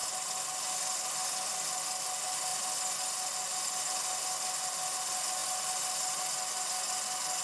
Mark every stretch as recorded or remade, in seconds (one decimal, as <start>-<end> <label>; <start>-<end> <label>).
0.0-7.4 recorded